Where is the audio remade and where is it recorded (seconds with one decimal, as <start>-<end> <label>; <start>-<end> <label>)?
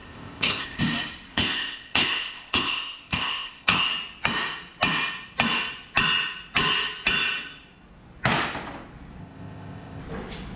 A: 0.0-0.8 remade; 0.8-1.3 recorded; 1.3-3.9 remade; 3.9-9.2 recorded; 9.2-10.0 remade; 10.0-10.6 recorded